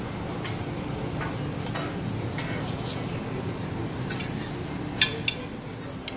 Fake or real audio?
real